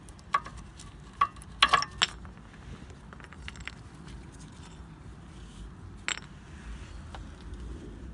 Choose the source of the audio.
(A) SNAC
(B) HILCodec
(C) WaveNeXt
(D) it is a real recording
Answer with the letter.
D